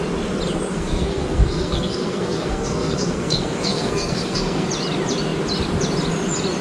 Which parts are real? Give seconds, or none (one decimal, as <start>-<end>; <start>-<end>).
0.0-0.7; 4.7-6.6